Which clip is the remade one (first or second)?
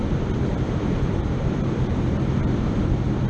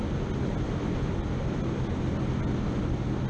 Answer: first